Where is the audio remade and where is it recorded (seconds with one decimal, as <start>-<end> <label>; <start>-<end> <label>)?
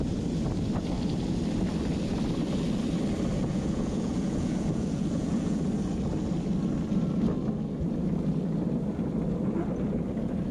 0.0-3.4 recorded; 3.4-5.6 remade; 5.6-10.5 recorded